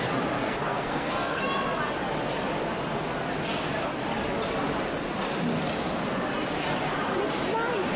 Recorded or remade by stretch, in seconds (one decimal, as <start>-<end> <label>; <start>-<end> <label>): 0.0-0.4 recorded; 0.4-1.4 remade; 1.4-8.0 recorded